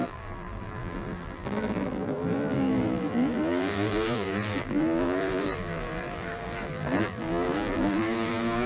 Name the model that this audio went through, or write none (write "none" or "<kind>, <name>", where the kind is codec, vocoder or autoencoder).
vocoder, BigVGAN v2